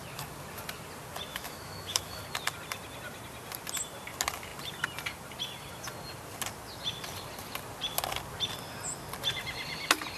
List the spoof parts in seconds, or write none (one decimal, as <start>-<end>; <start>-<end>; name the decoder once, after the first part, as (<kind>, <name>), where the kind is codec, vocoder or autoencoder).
1.3-2.2 (autoencoder, DAC-VAE)